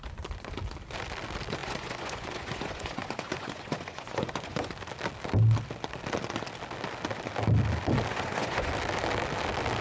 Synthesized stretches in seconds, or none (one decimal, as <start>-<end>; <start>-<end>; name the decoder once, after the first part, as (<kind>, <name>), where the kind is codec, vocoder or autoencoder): 1.6-4.7 (vocoder, Vocos); 8.1-8.7